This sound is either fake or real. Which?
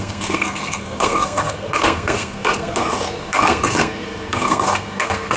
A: fake